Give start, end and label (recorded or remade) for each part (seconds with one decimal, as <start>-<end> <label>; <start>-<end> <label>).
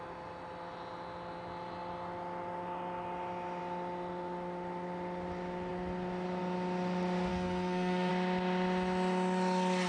0.0-7.3 recorded; 7.3-8.1 remade; 8.1-9.9 recorded